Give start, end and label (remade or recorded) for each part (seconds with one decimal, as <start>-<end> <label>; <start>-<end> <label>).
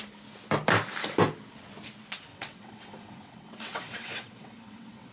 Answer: 0.0-2.3 recorded; 2.3-5.1 remade